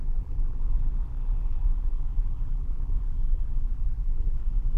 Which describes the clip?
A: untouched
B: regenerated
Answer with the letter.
B